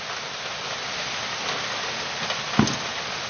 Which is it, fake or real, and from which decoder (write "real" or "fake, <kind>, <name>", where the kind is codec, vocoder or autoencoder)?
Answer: real